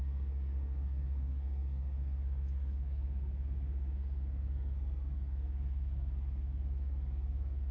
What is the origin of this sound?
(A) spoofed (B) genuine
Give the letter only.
A